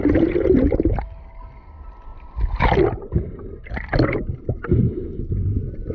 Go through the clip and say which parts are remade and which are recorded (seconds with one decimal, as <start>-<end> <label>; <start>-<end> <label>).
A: 0.0-2.1 recorded; 2.1-5.9 remade